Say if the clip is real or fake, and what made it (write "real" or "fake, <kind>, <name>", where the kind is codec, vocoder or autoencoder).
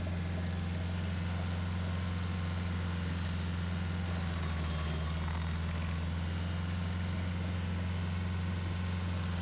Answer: real